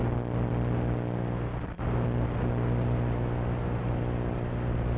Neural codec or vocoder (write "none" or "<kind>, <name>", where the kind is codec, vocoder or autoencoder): none